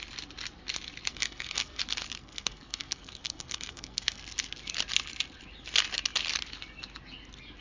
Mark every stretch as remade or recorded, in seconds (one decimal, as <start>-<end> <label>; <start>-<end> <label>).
0.0-1.1 recorded; 1.1-1.8 remade; 1.8-2.2 recorded; 2.2-4.2 remade; 4.2-7.6 recorded